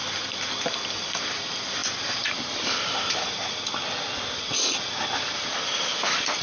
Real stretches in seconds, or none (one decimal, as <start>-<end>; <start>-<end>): none